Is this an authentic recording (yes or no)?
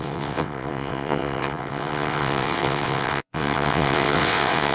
no